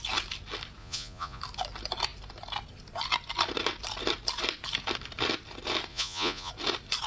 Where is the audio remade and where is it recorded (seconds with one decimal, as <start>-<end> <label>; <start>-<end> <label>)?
0.0-0.8 recorded; 0.8-1.4 remade; 1.4-5.9 recorded; 5.9-6.5 remade; 6.5-7.1 recorded